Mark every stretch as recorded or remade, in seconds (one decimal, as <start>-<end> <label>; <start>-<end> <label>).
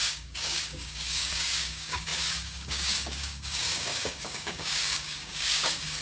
0.0-6.0 remade